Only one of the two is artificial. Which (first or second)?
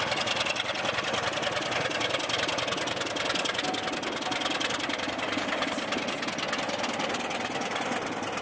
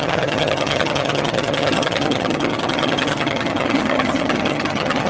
second